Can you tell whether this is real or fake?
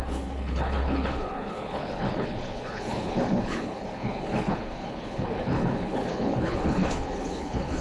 fake